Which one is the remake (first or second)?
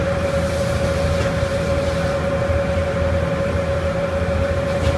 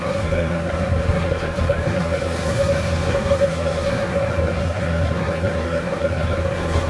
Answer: second